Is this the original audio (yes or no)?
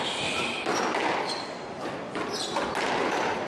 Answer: yes